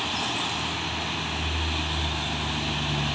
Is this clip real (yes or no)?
yes